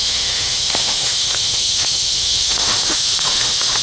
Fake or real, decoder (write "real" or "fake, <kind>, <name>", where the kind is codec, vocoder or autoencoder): fake, autoencoder, DAC-VAE